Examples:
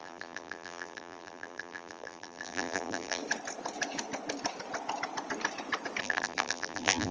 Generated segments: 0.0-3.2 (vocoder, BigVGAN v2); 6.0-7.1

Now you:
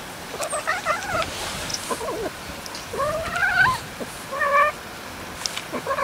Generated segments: none

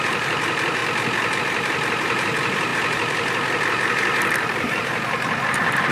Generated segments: 0.0-0.8 (vocoder, BigVGAN v2); 1.4-5.9

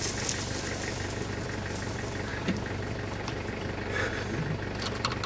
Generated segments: 2.3-4.1 (vocoder, BigVGAN v2)

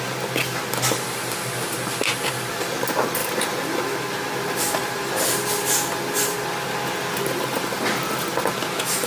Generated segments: none